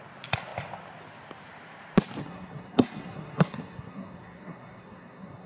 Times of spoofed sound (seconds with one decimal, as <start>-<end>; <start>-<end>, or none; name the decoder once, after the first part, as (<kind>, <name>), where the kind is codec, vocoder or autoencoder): 2.2-5.5 (codec, SNAC)